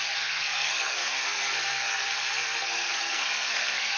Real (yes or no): no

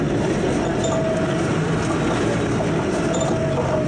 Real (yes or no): yes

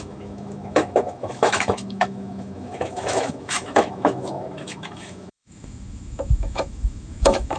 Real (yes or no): no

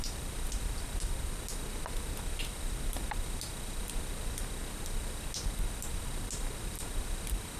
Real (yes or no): yes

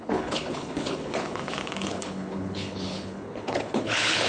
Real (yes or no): no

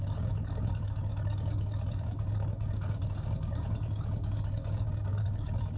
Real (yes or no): no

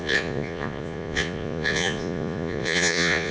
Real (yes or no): no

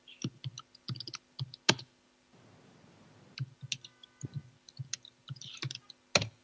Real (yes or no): yes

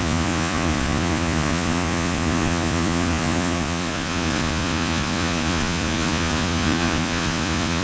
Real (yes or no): no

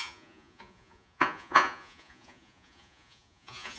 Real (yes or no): no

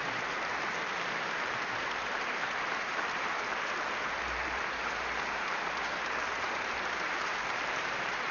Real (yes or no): no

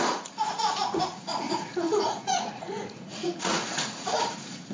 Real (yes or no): no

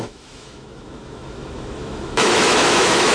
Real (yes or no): no